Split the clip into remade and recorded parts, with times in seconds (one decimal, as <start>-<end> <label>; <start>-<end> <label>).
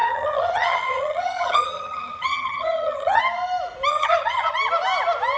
0.0-3.2 remade; 3.2-3.9 recorded; 3.9-4.5 remade; 4.5-5.4 recorded